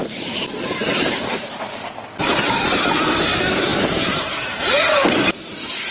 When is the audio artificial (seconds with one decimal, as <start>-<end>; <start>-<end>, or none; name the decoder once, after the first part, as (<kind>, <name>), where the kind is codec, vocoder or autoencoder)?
2.4-5.9 (vocoder, BigVGAN v2)